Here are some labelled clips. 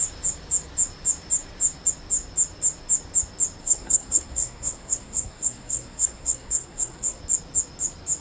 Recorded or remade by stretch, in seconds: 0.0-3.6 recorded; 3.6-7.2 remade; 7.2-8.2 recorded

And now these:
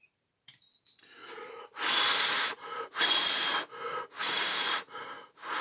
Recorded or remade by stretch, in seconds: 0.0-1.2 remade; 1.2-2.0 recorded; 2.0-3.5 remade; 3.5-4.2 recorded; 4.2-5.6 remade

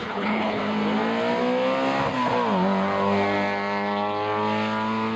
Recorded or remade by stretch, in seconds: 0.0-0.6 remade; 0.6-5.2 recorded